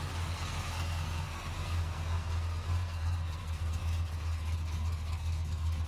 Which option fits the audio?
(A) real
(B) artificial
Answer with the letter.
B